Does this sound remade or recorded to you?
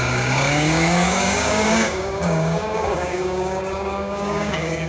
remade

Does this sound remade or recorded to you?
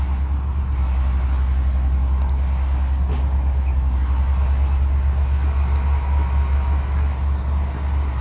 recorded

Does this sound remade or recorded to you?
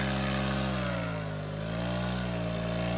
recorded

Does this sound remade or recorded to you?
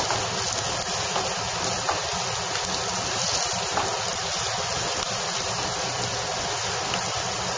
recorded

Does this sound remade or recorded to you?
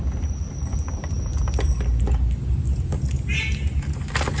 recorded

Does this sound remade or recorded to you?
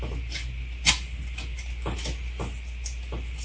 recorded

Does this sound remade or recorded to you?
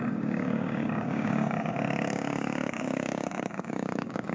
remade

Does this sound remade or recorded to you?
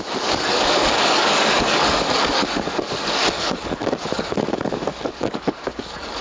remade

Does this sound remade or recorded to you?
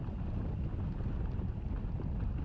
recorded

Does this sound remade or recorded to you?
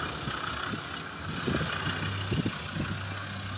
recorded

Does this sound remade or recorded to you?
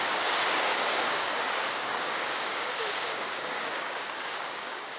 remade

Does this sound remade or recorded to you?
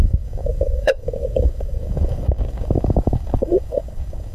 remade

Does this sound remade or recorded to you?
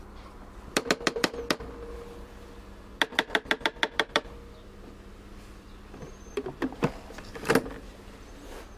recorded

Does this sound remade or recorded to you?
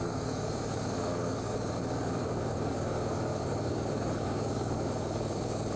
remade